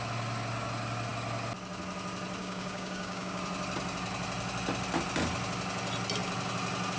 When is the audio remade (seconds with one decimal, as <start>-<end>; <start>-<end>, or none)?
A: 2.4-3.4